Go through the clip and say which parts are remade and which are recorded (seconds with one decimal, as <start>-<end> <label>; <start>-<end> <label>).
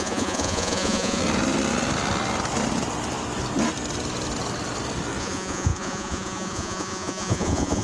0.0-1.2 remade; 1.2-5.2 recorded; 5.2-7.8 remade